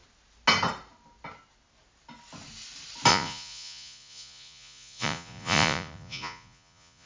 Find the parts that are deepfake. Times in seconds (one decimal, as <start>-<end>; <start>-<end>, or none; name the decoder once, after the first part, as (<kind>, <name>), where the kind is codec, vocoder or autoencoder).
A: 3.1-7.1 (vocoder, Vocos)